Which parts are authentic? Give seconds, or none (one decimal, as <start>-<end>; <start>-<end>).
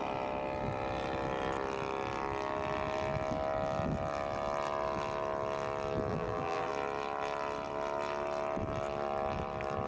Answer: 0.0-6.1; 6.7-9.9